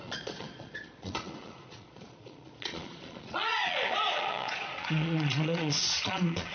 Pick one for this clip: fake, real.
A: fake